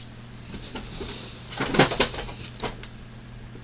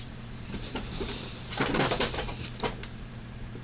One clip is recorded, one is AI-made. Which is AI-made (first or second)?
second